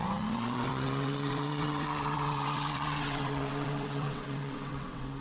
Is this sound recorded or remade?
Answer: remade